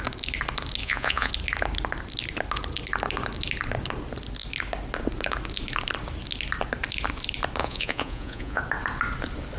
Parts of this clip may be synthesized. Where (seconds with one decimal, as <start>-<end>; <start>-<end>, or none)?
0.8-1.3; 7.6-8.6